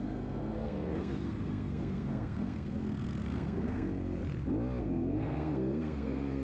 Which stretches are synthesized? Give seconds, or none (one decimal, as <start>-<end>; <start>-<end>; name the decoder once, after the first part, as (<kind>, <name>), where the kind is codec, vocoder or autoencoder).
0.0-4.2 (codec, SNAC); 4.8-6.4